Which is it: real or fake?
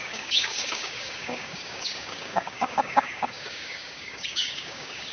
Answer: fake